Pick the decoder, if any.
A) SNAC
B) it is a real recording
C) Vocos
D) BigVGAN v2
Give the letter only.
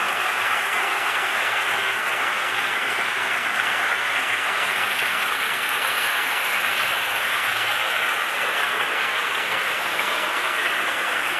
A